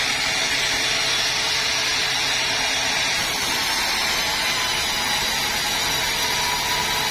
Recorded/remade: recorded